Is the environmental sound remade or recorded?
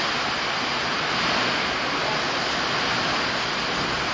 recorded